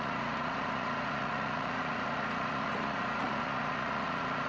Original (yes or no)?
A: no